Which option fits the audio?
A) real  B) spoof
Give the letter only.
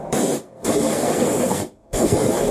B